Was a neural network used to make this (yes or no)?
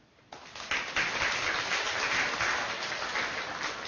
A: no